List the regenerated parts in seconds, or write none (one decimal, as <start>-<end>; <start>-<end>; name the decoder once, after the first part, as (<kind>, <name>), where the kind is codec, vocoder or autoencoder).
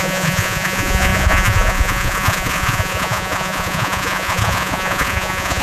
0.0-5.6 (vocoder, Vocos)